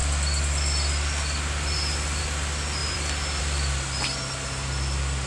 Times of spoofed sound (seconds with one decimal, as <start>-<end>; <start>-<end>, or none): 2.8-3.4

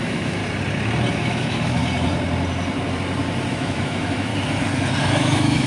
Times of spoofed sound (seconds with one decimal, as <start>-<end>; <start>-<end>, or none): 0.0-0.4; 1.1-1.8; 3.5-4.3; 5.0-5.7

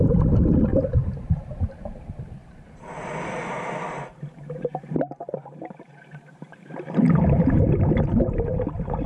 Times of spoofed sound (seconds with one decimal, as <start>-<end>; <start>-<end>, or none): 0.0-9.1